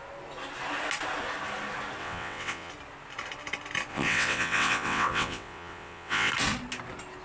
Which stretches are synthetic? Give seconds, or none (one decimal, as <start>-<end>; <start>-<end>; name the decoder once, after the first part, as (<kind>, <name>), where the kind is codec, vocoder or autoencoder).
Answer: 2.0-2.7 (vocoder, WaveNeXt); 3.9-6.3